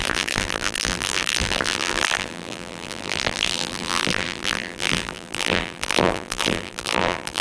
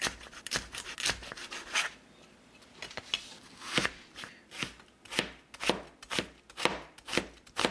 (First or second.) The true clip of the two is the second